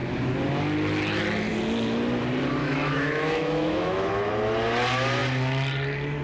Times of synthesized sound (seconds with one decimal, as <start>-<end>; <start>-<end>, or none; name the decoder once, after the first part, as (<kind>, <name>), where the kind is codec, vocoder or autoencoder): 2.6-4.3 (autoencoder, DAC-VAE)